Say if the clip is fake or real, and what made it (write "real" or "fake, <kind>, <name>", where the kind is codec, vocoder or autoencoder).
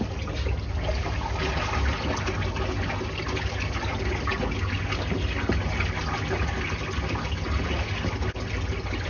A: real